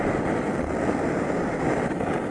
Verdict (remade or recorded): recorded